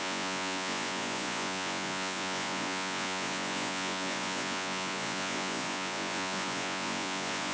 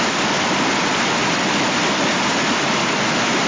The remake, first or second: first